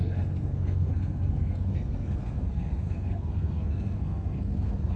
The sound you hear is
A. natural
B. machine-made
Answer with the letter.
B